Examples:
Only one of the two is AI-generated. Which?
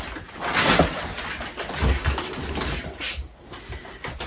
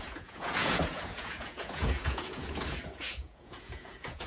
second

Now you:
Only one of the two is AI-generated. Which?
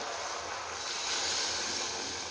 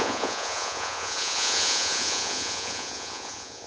second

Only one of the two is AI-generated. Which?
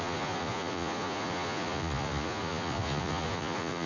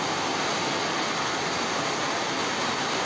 first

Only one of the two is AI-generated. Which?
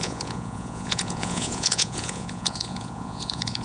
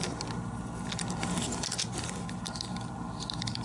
first